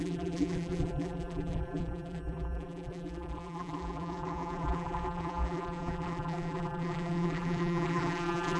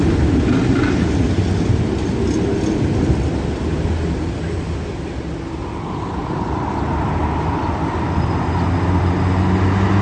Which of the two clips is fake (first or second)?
first